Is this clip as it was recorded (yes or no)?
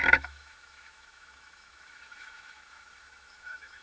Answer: no